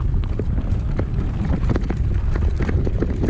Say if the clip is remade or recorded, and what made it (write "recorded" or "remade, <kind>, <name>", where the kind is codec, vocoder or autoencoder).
recorded